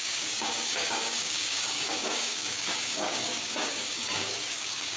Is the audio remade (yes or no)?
yes